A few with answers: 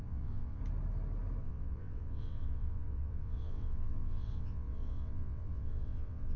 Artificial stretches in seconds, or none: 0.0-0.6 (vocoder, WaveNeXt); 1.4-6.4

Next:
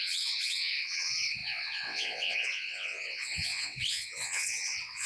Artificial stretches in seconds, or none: 0.0-5.1 (vocoder, WaveNeXt)

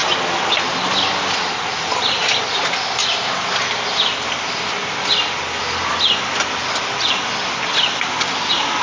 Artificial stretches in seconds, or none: none